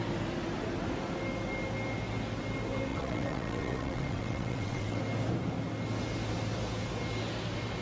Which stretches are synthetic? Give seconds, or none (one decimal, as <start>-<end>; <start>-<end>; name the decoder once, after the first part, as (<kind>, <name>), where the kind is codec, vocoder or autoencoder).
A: 2.9-5.0 (vocoder, WaveNeXt)